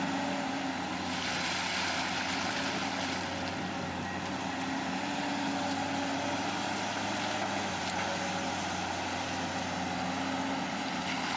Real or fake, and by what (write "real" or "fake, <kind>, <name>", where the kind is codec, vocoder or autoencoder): real